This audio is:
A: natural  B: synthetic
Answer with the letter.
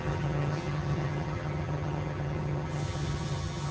B